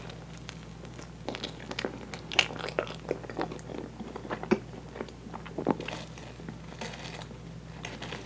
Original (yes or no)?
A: yes